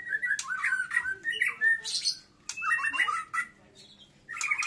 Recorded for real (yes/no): yes